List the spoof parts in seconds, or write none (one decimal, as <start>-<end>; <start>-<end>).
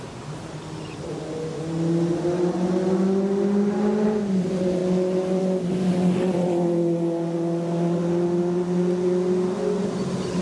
none